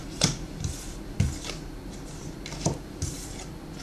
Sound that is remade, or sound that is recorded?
recorded